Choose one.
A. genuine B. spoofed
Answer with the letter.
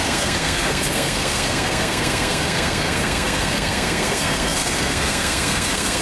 B